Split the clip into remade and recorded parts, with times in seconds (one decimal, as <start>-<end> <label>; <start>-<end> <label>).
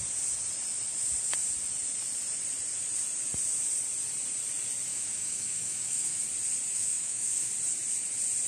0.0-4.9 recorded; 4.9-6.2 remade; 6.2-6.7 recorded; 6.7-7.5 remade; 7.5-8.5 recorded